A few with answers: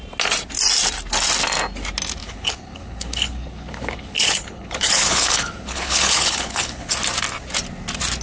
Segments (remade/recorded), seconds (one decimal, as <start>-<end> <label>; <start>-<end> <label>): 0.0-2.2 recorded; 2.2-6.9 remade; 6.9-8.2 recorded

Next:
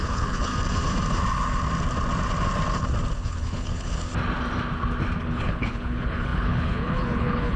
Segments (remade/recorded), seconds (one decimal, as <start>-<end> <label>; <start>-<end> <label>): 0.0-0.5 remade; 0.5-3.1 recorded; 3.1-4.1 remade; 4.1-5.2 recorded; 5.2-7.6 remade

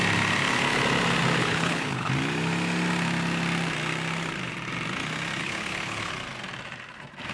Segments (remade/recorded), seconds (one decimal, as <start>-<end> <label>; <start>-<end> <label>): 0.0-1.4 recorded; 1.4-2.1 remade; 2.1-5.4 recorded; 5.4-6.1 remade; 6.1-7.3 recorded

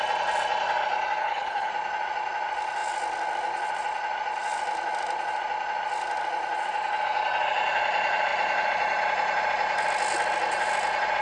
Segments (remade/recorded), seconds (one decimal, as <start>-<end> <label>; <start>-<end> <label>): 0.0-1.2 recorded; 1.2-1.7 remade; 1.7-11.2 recorded

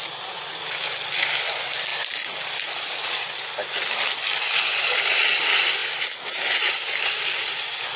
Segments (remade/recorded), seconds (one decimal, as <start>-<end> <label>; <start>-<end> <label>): 0.0-8.0 recorded

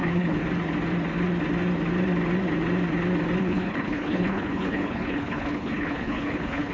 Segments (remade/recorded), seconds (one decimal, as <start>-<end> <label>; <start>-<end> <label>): 0.0-0.4 remade; 0.4-3.4 recorded; 3.4-6.7 remade

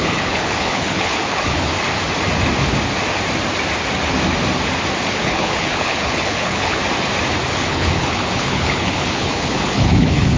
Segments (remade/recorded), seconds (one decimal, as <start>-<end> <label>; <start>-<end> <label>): 0.0-1.7 remade; 1.7-5.1 recorded; 5.1-6.8 remade; 6.8-7.5 recorded; 7.5-10.4 remade